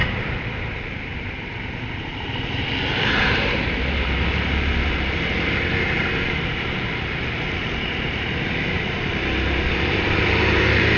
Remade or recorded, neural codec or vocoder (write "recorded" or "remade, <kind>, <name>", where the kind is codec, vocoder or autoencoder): remade, vocoder, BigVGAN v2